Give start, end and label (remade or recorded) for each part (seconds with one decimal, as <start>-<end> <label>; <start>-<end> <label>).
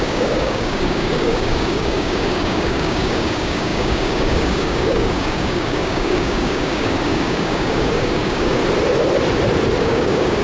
0.0-8.6 remade; 8.6-9.8 recorded; 9.8-10.4 remade